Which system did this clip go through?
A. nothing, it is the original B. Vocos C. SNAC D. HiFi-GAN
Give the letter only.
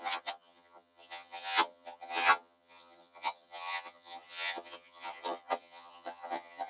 D